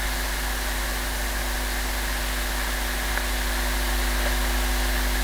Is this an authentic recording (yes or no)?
yes